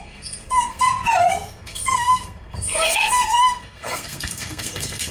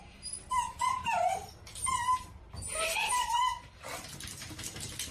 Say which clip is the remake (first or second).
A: first